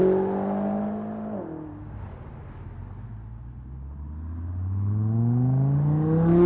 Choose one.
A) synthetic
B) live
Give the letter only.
B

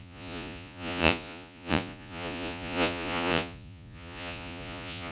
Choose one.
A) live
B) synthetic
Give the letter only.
B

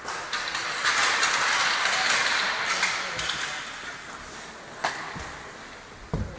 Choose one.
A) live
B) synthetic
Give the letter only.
A